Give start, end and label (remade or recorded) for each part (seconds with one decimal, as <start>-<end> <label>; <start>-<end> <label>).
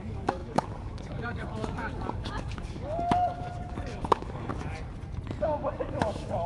0.0-4.5 remade; 4.5-5.4 recorded; 5.4-6.5 remade